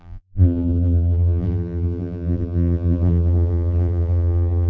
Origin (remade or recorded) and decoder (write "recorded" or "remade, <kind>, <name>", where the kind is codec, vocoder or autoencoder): remade, vocoder, BigVGAN v2